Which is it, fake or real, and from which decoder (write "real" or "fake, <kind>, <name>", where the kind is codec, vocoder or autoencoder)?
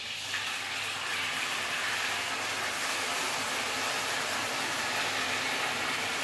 real